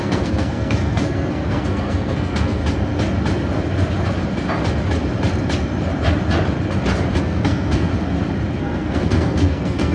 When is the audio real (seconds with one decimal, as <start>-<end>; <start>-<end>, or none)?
2.6-7.2; 7.9-8.6